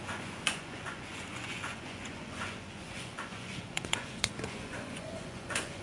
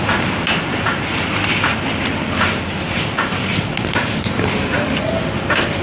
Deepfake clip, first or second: first